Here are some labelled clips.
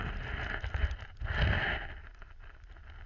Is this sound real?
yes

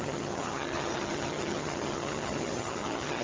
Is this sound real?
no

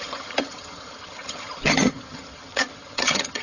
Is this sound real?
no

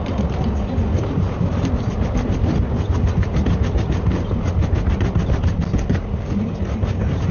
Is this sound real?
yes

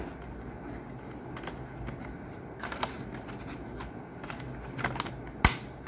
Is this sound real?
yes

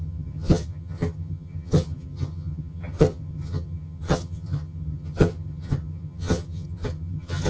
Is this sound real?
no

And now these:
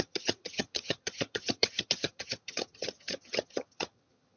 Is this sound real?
no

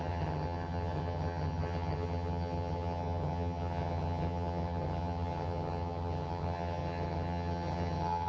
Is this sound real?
no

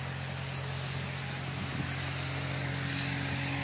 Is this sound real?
yes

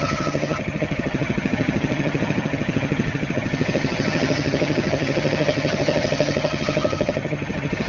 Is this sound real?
no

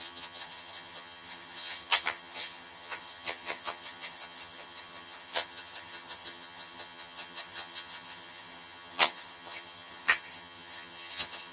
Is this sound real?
no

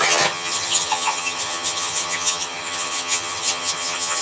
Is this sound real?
no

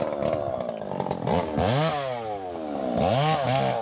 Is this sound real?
yes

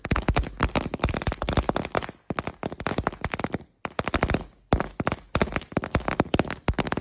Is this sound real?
yes